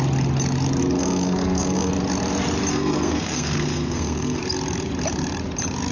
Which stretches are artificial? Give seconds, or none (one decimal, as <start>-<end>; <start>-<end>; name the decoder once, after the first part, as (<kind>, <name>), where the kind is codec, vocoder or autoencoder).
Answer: 1.0-1.9 (codec, SNAC); 2.7-4.4